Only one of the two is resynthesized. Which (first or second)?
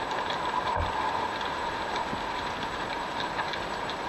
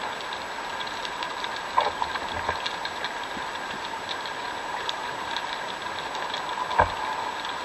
first